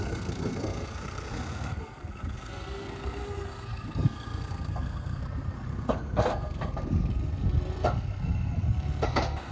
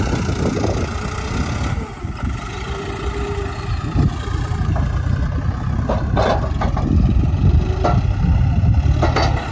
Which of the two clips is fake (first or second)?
first